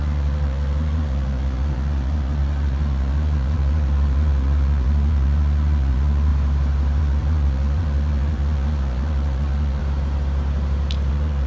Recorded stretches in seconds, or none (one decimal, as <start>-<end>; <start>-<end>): 6.3-7.0; 9.8-11.1